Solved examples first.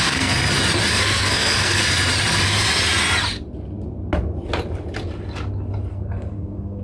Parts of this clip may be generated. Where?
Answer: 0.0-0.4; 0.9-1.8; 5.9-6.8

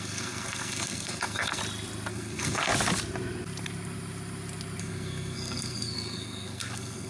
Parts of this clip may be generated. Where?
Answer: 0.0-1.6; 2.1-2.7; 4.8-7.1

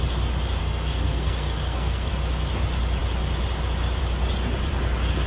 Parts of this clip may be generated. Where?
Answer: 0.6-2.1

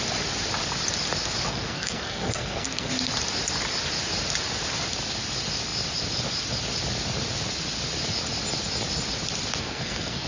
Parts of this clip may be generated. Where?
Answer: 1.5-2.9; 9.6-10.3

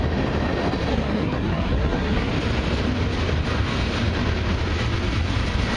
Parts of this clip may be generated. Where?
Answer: 0.9-2.3